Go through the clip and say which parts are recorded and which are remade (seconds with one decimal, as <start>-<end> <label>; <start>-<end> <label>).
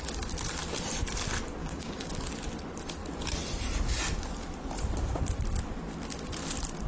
0.0-1.6 recorded; 1.6-2.1 remade; 2.1-6.9 recorded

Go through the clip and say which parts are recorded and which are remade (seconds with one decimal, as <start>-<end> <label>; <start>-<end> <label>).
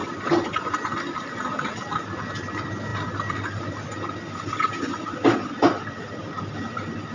0.0-7.1 recorded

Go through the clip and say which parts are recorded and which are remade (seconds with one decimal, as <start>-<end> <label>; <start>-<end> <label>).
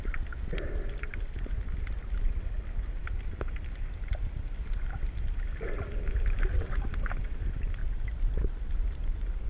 0.0-9.5 recorded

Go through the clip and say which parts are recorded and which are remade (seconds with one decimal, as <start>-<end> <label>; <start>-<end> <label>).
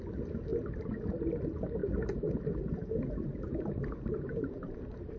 0.0-1.8 recorded; 1.8-5.2 remade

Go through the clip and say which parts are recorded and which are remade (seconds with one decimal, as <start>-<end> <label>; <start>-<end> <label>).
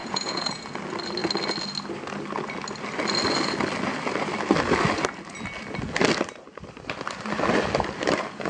0.0-0.6 remade; 0.6-8.5 recorded